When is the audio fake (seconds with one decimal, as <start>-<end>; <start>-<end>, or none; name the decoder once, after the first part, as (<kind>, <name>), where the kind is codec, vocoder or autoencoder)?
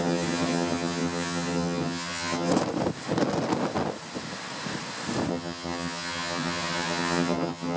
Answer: 0.0-2.5 (vocoder, HiFi-GAN); 5.3-7.8